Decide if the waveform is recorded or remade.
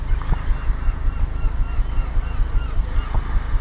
recorded